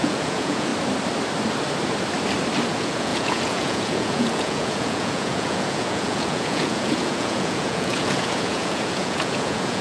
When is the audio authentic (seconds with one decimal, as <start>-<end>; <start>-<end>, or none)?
0.7-2.7